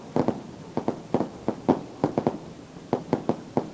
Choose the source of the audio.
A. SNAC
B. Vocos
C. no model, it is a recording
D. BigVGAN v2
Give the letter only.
C